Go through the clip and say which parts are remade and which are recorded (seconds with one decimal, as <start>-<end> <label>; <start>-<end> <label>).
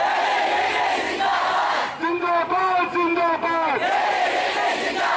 0.0-1.3 recorded; 1.3-2.6 remade; 2.6-3.8 recorded; 3.8-4.3 remade; 4.3-5.2 recorded